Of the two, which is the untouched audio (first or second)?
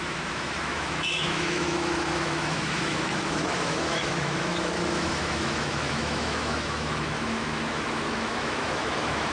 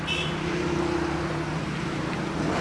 second